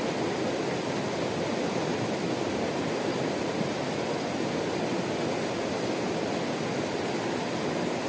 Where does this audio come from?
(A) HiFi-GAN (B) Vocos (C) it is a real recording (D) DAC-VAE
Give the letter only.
C